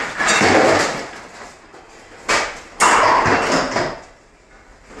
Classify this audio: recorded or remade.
recorded